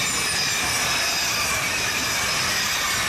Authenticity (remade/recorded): recorded